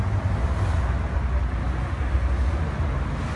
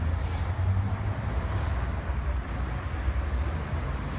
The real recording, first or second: first